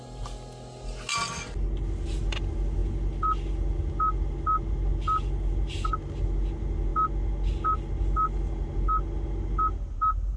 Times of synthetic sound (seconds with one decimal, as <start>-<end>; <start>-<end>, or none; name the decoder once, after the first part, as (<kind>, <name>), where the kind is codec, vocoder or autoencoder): none